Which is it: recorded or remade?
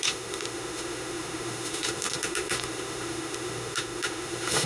remade